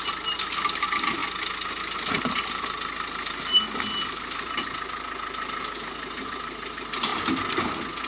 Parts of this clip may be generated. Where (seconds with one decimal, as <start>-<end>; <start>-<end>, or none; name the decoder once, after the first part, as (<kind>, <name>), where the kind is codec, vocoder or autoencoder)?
none